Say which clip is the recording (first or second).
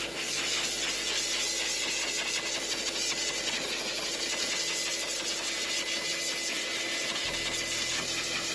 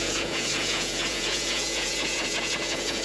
first